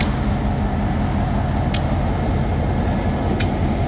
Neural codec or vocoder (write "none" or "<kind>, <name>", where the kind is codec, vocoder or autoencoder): none